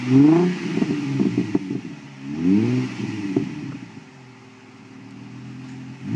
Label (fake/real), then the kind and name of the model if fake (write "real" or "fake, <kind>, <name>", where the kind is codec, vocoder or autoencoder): real